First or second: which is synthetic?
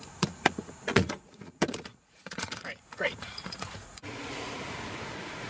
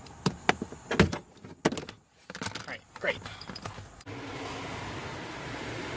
first